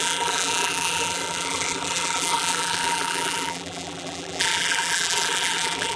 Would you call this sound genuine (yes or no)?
no